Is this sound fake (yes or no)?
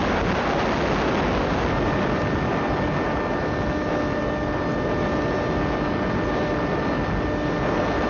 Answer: no